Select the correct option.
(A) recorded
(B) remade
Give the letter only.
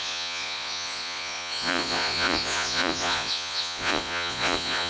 B